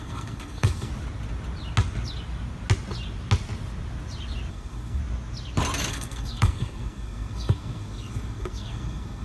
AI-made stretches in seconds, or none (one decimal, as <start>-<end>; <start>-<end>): 0.0-0.9; 4.5-5.0; 5.9-9.2